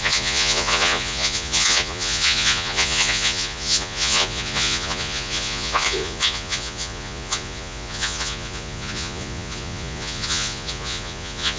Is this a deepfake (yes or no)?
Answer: yes